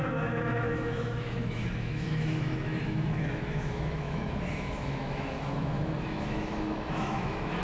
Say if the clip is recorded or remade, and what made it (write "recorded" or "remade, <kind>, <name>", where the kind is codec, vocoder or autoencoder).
remade, autoencoder, DAC-VAE